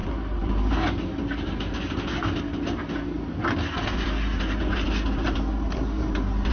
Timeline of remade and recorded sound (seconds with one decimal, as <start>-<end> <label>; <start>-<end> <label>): 0.0-6.5 recorded